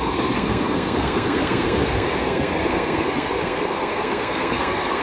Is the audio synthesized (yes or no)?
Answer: yes